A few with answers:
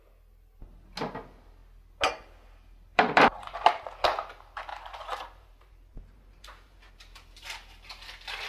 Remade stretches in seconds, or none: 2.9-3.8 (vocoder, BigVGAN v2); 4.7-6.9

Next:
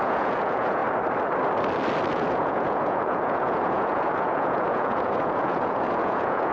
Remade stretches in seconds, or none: 0.0-0.8 (vocoder, Vocos); 2.1-6.5